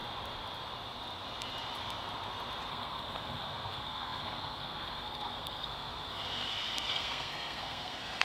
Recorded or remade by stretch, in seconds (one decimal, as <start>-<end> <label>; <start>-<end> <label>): 0.0-2.7 recorded; 2.7-8.2 remade